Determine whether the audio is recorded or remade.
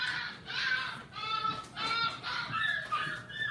recorded